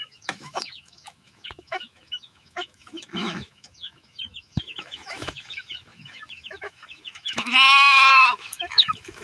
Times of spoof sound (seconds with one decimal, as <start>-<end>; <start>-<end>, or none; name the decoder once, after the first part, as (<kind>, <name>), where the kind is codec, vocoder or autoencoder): 0.0-9.2 (autoencoder, DAC-VAE)